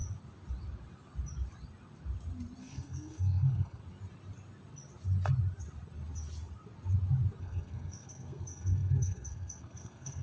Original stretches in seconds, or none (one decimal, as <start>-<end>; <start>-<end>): 0.0-2.6; 3.8-7.4